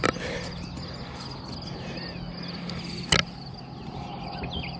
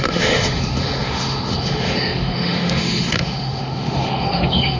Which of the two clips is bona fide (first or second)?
first